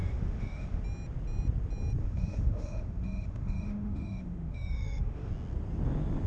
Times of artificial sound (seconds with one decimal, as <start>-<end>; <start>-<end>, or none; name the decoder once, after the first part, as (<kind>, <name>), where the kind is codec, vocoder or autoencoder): 0.0-0.8 (autoencoder, DAC-VAE); 2.0-5.3

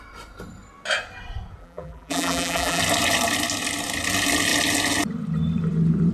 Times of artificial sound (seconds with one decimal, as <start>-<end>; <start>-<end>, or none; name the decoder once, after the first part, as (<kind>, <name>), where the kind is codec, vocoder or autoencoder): 1.6-2.8 (vocoder, BigVGAN v2)

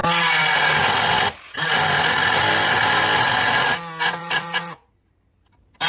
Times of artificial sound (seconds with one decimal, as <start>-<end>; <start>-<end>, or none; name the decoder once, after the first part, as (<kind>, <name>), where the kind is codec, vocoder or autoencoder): 4.2-4.9 (vocoder, Vocos)

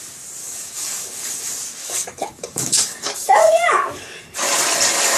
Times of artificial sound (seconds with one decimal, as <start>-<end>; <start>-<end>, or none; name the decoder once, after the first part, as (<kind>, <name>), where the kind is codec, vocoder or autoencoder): 0.4-1.4 (codec, DAC); 1.8-4.2

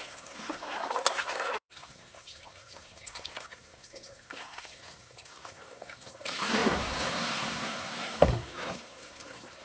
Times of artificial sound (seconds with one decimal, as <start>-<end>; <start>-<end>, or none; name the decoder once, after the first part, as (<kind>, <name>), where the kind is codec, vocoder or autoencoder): 0.0-9.6 (codec, SNAC)

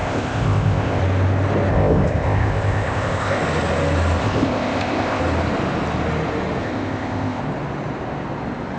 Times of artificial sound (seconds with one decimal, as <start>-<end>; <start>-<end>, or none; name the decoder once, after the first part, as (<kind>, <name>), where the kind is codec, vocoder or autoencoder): 0.0-1.0 (codec, ZipCodec); 1.7-3.4; 4.2-5.2; 6.6-7.4

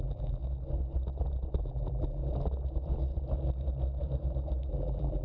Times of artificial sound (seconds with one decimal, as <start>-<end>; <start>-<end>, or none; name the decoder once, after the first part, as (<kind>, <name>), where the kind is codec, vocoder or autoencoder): 0.0-0.4 (vocoder, BigVGAN v2); 1.6-2.2; 4.7-5.2